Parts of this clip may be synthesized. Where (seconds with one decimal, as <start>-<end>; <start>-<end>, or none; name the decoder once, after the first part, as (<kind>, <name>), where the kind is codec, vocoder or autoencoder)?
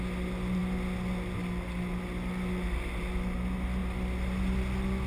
none